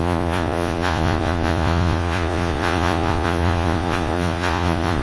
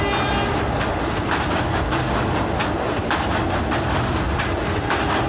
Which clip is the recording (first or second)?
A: second